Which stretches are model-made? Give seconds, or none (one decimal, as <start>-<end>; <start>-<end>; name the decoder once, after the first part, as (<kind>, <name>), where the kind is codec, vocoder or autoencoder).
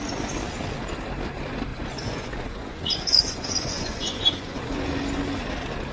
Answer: 1.7-4.9 (vocoder, Vocos)